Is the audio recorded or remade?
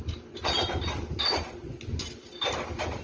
recorded